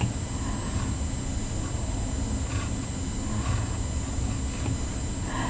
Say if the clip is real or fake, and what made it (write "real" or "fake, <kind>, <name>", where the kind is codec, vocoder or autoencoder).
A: real